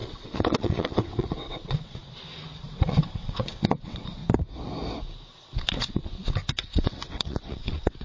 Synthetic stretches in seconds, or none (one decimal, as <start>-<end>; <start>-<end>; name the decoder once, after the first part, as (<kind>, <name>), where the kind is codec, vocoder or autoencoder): 0.0-2.0 (vocoder, WaveNeXt); 2.6-4.2; 5.3-6.0; 6.5-8.0